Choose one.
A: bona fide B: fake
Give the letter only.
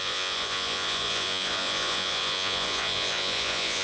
B